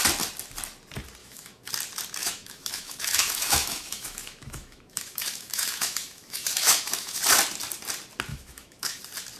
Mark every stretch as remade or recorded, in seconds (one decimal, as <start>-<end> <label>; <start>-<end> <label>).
0.0-1.2 recorded; 1.2-1.7 remade; 1.7-2.2 recorded; 2.2-7.2 remade; 7.2-8.3 recorded; 8.3-9.0 remade; 9.0-9.4 recorded

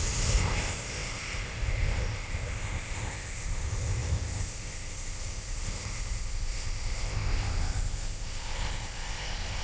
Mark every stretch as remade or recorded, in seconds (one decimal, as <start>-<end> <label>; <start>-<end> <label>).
0.0-9.6 remade

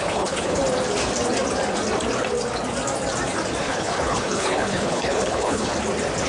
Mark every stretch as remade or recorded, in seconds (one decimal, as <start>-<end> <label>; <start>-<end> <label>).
0.0-0.6 remade; 0.6-3.6 recorded; 3.6-5.7 remade; 5.7-6.3 recorded

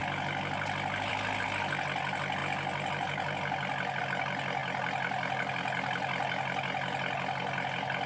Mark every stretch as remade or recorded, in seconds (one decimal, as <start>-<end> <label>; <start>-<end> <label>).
0.0-8.1 recorded

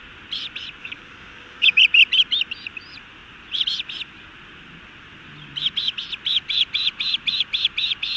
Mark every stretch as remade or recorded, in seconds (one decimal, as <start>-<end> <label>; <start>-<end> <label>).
0.0-0.8 recorded; 0.8-1.8 remade; 1.8-8.2 recorded